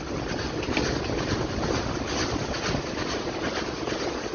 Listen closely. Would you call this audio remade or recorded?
recorded